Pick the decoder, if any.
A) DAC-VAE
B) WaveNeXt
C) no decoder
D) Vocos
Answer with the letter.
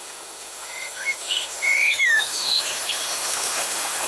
A